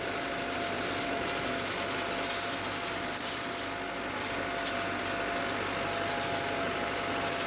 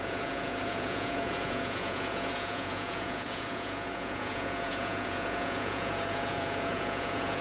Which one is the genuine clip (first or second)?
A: first